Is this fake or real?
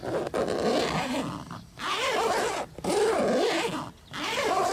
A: real